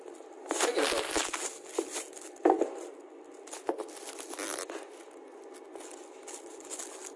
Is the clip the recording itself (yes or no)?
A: yes